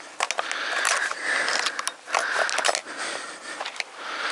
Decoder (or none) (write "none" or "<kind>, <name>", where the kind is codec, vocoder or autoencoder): none